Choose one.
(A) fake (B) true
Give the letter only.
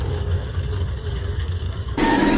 A